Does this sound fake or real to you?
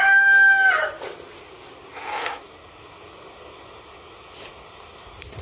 real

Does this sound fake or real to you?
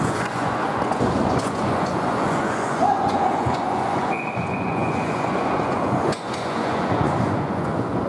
fake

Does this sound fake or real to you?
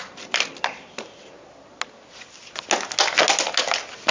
real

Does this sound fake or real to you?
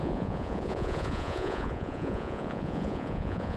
fake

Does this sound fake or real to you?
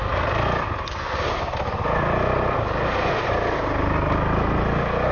real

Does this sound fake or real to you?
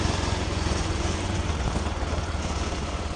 fake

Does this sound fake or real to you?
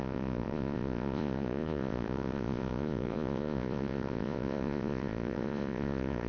fake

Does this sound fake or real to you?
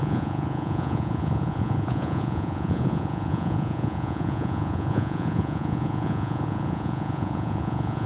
fake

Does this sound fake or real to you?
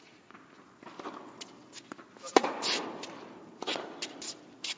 real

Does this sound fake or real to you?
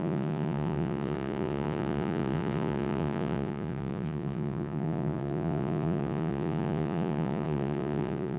fake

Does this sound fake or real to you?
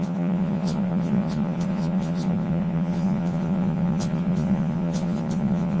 fake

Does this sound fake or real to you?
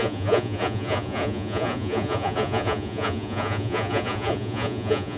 fake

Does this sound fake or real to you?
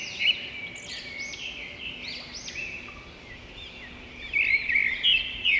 real